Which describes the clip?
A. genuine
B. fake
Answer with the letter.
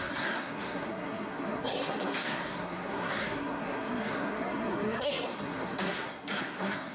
B